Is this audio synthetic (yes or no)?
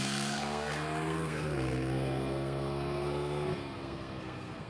yes